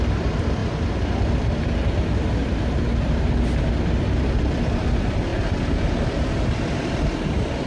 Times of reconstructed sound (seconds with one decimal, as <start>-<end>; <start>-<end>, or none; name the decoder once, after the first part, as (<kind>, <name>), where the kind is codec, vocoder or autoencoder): 2.4-3.1 (vocoder, BigVGAN v2); 5.3-7.2